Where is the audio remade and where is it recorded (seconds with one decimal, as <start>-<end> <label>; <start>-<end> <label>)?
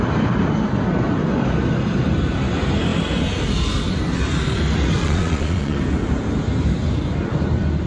0.0-5.0 recorded; 5.0-5.8 remade; 5.8-7.9 recorded